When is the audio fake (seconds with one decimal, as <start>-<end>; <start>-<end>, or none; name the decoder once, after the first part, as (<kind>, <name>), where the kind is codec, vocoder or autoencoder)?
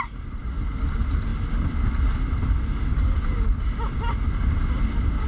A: none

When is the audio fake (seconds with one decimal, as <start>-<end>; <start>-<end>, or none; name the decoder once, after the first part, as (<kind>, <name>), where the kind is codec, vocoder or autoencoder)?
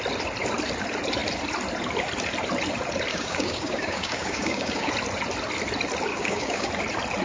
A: 3.1-4.9 (codec, DAC); 6.1-6.7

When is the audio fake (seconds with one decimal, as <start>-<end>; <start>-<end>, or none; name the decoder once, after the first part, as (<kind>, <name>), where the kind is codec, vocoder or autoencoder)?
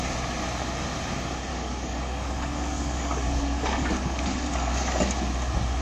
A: 1.5-5.0 (codec, DAC)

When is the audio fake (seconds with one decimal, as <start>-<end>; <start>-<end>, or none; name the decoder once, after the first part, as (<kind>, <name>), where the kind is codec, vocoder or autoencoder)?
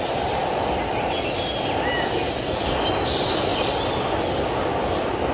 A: none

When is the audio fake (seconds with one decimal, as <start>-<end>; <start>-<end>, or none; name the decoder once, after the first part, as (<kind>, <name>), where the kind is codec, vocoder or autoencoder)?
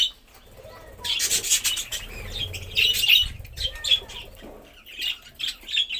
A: none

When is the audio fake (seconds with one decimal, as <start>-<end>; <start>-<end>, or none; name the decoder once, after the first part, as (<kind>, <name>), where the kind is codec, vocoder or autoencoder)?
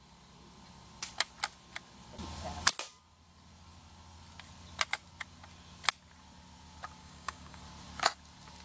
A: 7.0-7.6 (codec, DAC)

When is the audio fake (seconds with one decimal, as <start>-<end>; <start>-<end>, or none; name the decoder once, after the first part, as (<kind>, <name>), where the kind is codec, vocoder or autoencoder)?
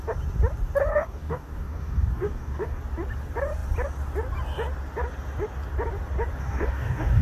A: 0.9-2.8 (codec, DAC); 6.4-7.2